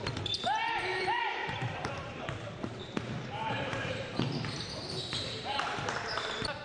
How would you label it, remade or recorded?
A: remade